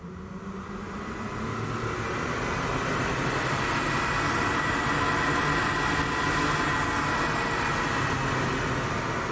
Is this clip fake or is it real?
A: real